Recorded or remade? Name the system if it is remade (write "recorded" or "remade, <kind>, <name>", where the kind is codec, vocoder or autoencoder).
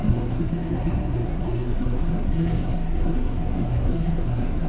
remade, codec, SNAC